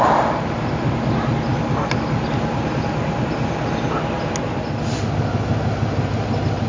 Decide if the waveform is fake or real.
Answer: real